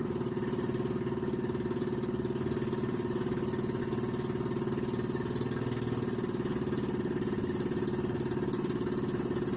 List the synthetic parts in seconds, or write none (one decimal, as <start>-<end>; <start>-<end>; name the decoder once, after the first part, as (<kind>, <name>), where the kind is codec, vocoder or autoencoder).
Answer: none